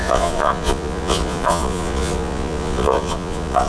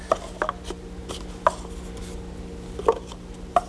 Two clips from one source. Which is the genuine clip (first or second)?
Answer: second